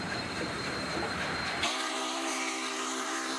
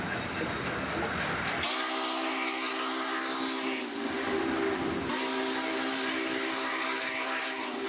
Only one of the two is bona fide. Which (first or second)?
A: second